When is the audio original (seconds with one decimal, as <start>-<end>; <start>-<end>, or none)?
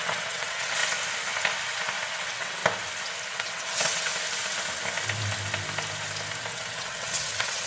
0.8-2.1; 2.6-3.3; 4.1-6.5